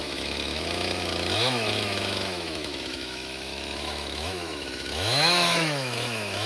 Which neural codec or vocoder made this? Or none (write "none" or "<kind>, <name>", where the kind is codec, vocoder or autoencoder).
autoencoder, DAC-VAE